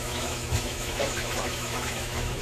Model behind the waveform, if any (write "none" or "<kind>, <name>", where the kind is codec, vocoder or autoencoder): autoencoder, DAC-VAE